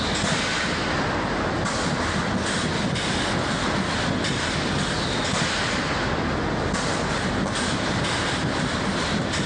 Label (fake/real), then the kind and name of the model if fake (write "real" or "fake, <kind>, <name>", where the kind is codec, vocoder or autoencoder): real